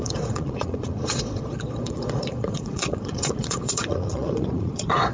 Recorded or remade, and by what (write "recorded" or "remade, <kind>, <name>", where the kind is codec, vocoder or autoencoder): remade, vocoder, Vocos